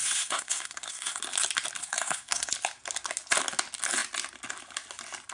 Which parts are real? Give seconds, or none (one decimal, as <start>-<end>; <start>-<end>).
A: 1.2-1.8; 2.5-5.3